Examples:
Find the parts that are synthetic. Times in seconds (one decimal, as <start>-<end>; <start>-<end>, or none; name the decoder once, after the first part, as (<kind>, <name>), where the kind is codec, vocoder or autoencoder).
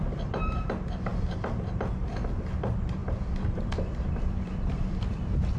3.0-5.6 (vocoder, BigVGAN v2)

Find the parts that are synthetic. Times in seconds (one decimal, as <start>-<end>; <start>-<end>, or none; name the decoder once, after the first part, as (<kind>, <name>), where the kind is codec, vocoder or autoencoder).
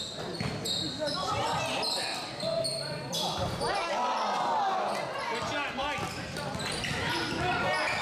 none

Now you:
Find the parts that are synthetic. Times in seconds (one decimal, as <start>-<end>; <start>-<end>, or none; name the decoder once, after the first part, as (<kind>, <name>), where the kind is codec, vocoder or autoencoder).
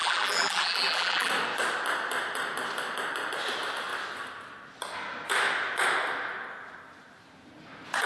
0.0-1.3 (vocoder, BigVGAN v2)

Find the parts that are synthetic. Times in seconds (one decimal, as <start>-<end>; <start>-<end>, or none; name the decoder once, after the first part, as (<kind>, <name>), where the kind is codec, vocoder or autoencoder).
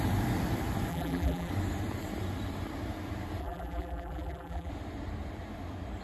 0.9-1.5 (vocoder, BigVGAN v2); 3.4-4.7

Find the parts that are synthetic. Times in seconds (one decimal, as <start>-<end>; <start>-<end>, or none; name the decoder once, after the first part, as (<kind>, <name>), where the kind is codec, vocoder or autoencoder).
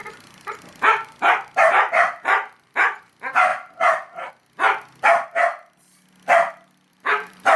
0.0-3.1 (vocoder, BigVGAN v2); 6.9-7.6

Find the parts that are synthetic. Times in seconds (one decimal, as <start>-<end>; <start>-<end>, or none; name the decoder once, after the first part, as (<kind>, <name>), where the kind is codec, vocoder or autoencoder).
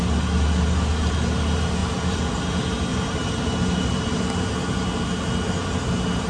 1.8-2.5 (vocoder, BigVGAN v2); 2.9-4.2